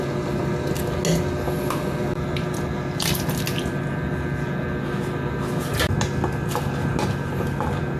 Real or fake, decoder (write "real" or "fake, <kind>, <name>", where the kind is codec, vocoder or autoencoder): real